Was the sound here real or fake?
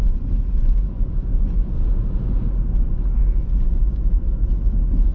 real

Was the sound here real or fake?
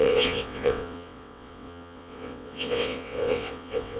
fake